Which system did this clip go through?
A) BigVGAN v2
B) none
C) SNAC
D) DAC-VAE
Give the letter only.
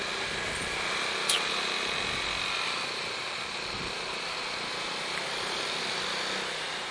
B